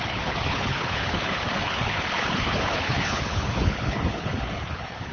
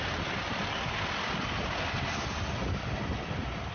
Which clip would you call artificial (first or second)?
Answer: first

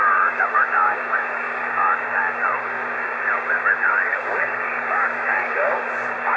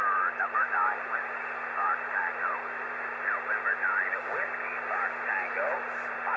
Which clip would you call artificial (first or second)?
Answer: first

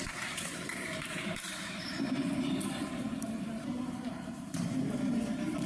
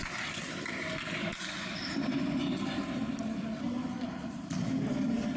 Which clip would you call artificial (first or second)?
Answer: first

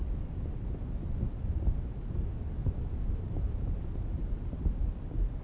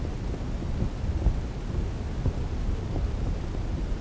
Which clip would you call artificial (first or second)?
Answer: first